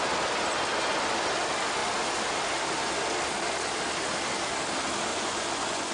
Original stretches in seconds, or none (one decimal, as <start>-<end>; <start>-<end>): 0.0-5.1